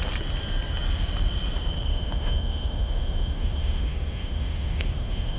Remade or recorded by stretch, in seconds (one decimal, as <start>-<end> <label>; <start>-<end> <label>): 0.0-1.9 recorded; 1.9-5.4 remade